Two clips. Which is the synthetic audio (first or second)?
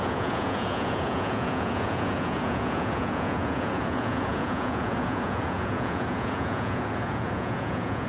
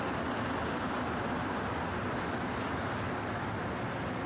first